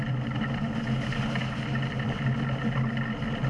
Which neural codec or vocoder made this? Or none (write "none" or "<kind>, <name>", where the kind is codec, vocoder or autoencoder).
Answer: none